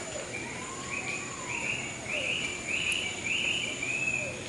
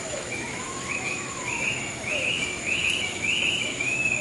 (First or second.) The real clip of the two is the first